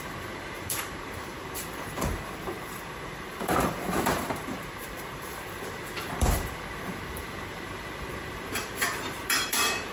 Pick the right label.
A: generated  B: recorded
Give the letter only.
A